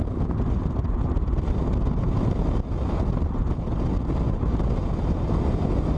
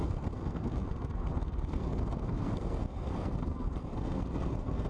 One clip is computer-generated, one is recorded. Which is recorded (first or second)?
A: first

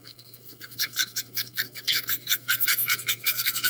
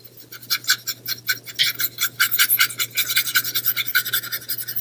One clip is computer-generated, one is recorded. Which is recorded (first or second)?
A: second